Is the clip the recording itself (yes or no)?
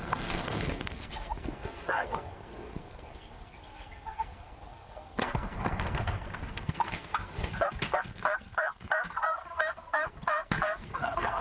no